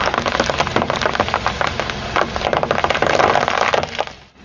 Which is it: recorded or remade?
recorded